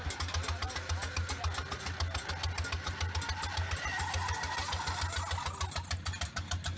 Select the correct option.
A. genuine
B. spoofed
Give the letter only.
A